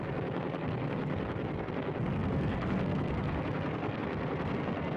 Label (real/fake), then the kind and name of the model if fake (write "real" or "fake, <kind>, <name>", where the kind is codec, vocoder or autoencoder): fake, codec, SNAC